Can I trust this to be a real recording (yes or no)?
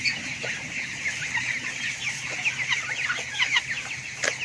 yes